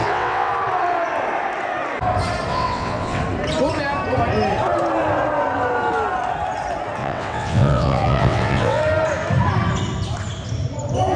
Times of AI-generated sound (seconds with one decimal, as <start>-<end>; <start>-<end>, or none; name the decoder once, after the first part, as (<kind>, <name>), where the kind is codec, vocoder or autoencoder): 0.0-0.5 (vocoder, WaveNeXt); 2.5-3.2; 7.0-8.8